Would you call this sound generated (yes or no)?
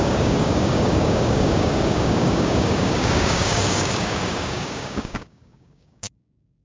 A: yes